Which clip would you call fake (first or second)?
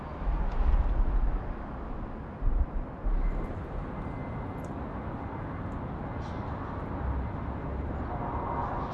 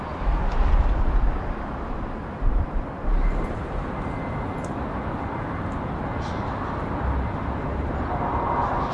second